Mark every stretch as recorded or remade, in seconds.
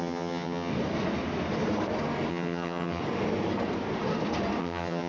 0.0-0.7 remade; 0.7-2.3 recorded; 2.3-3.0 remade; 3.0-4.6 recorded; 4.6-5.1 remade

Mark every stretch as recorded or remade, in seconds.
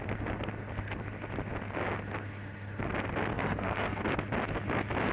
0.0-3.3 recorded; 3.3-4.0 remade; 4.0-5.1 recorded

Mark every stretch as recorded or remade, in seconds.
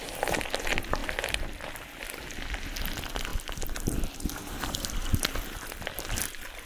0.0-3.3 recorded; 3.3-4.9 remade; 4.9-6.7 recorded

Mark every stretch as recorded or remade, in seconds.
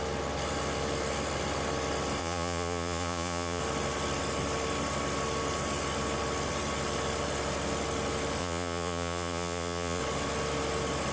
0.0-2.2 recorded; 2.2-3.6 remade; 3.6-8.4 recorded; 8.4-10.0 remade; 10.0-11.1 recorded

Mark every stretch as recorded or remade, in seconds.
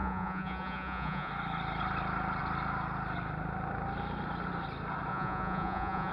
0.0-1.3 remade; 1.3-5.1 recorded; 5.1-6.1 remade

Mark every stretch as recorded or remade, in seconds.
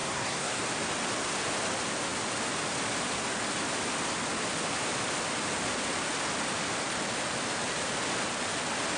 0.0-0.6 remade; 0.6-9.0 recorded